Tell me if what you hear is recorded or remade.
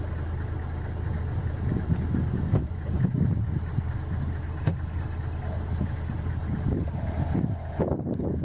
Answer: recorded